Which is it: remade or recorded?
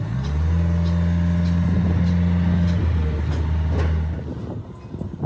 recorded